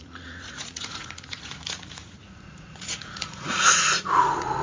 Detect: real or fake fake